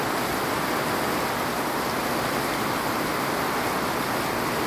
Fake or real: real